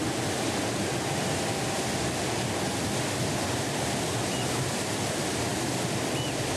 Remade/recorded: recorded